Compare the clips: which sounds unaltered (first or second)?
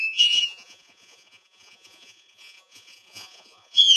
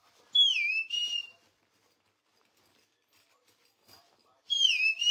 second